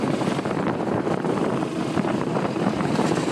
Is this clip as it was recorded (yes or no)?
no